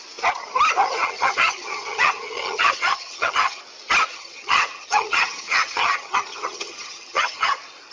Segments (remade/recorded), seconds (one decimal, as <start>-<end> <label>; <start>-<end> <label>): 0.0-0.8 recorded; 0.8-3.6 remade; 3.6-4.1 recorded; 4.1-7.5 remade; 7.5-7.9 recorded